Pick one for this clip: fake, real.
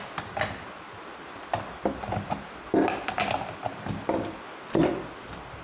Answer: real